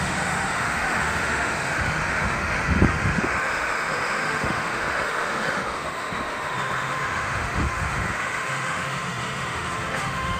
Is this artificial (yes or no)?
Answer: yes